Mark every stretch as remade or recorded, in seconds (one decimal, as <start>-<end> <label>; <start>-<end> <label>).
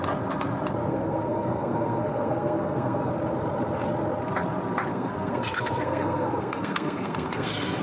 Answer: 0.0-0.9 recorded; 0.9-3.1 remade; 3.1-4.9 recorded; 4.9-7.8 remade